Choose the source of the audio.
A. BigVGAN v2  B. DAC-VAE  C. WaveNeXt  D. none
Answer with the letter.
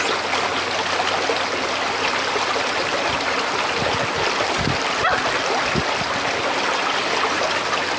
D